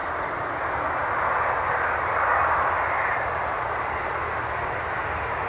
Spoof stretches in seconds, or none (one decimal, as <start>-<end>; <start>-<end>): 0.0-0.5; 1.0-3.5